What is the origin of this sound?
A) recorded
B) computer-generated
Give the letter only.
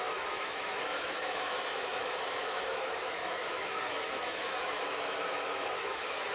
B